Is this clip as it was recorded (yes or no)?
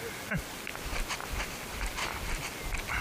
yes